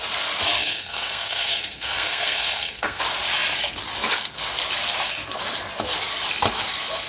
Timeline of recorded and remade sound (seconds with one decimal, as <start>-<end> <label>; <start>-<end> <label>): 0.0-0.6 recorded; 0.6-3.0 remade; 3.0-7.1 recorded